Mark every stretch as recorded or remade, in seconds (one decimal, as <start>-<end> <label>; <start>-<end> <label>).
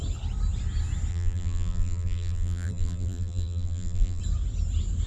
0.0-1.1 recorded; 1.1-4.2 remade; 4.2-5.1 recorded